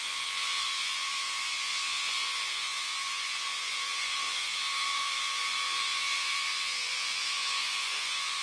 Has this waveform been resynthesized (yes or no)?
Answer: yes